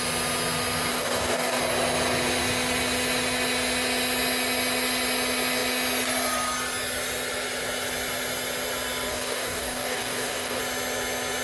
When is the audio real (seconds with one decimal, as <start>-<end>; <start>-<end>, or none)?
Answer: 0.0-0.9; 1.6-9.1; 10.6-11.4